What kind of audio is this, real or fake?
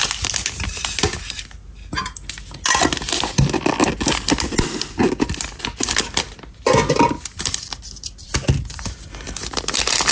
real